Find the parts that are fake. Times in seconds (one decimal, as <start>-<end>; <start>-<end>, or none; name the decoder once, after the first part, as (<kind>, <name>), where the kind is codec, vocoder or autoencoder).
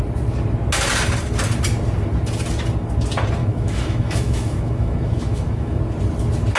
3.4-5.8 (autoencoder, DAC-VAE)